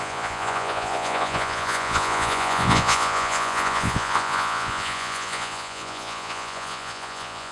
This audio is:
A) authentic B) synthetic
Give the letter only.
B